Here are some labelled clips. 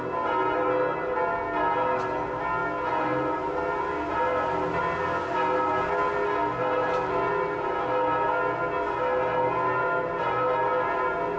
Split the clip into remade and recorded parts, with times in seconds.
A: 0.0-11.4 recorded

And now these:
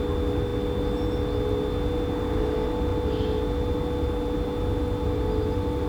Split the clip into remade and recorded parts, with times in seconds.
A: 0.0-5.9 recorded

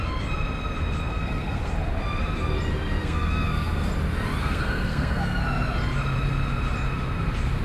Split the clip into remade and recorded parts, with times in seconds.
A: 0.0-1.1 recorded; 1.1-1.7 remade; 1.7-3.0 recorded; 3.0-3.9 remade; 3.9-4.4 recorded; 4.4-5.2 remade; 5.2-7.6 recorded

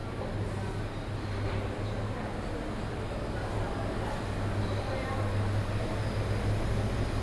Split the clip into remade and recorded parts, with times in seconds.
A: 0.0-7.2 recorded

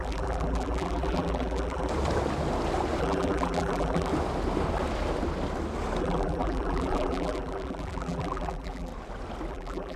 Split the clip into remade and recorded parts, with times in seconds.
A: 0.0-1.9 remade; 1.9-3.0 recorded; 3.0-4.1 remade; 4.1-6.0 recorded; 6.0-8.9 remade; 8.9-9.5 recorded; 9.5-10.0 remade

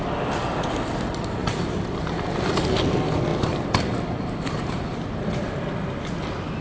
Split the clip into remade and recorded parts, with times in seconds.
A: 0.0-1.4 recorded; 1.4-2.2 remade; 2.2-3.3 recorded; 3.3-6.0 remade; 6.0-6.6 recorded